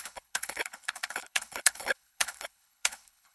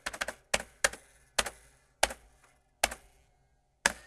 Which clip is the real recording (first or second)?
second